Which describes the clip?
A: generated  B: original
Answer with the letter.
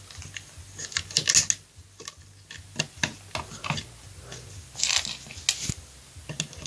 B